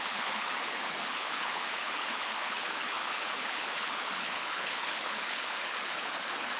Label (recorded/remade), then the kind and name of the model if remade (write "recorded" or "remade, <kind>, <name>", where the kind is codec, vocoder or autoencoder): remade, codec, HILCodec